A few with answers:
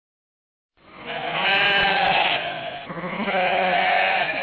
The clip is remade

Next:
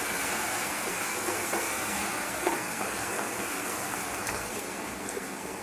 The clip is remade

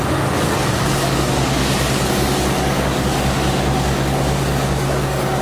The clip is remade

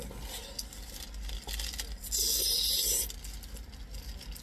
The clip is recorded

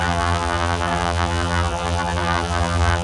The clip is remade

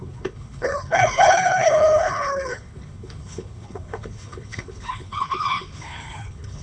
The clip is remade